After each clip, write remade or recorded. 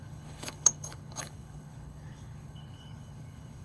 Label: remade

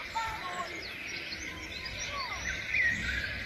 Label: remade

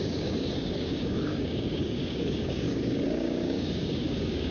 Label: remade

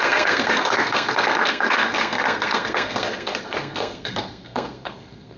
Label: remade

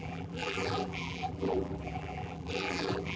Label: remade